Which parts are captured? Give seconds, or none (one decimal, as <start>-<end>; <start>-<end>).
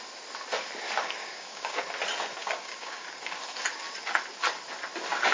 0.0-1.2; 1.8-2.4; 3.4-5.3